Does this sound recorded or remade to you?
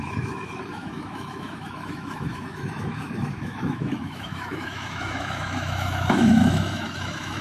remade